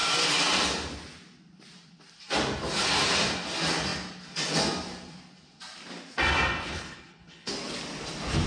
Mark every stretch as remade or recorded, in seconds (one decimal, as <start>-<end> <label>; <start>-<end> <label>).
0.0-6.7 recorded; 6.7-7.5 remade; 7.5-8.5 recorded